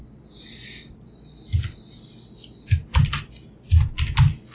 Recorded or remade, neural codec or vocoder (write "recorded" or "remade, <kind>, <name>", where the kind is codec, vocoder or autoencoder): recorded